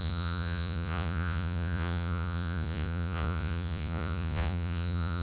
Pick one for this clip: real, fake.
fake